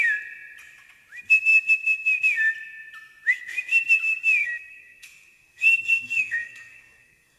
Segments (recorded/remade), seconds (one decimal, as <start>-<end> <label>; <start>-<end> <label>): 0.0-4.4 recorded; 4.4-7.4 remade